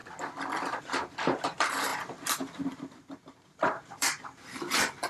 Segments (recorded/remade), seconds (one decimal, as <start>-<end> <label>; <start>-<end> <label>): 0.0-0.8 recorded; 0.8-5.1 remade